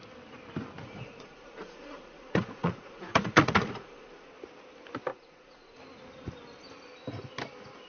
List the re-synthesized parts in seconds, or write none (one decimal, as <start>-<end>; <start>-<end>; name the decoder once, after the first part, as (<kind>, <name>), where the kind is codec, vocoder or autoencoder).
0.8-4.3 (vocoder, Vocos); 5.1-5.8